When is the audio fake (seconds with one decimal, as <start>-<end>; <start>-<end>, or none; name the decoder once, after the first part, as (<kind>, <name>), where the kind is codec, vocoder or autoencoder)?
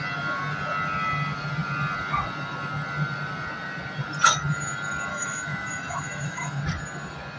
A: 5.1-6.6 (autoencoder, DAC-VAE)